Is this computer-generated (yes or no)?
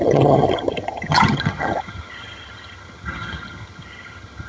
yes